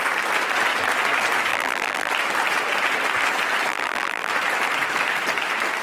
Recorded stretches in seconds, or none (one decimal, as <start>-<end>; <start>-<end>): 0.0-1.5; 2.1-3.7; 4.3-5.8